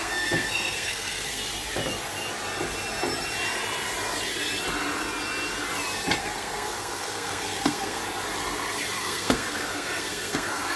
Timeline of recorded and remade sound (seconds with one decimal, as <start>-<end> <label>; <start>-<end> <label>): 0.0-1.4 remade; 1.4-6.2 recorded; 6.2-8.0 remade; 8.0-9.0 recorded; 9.0-10.8 remade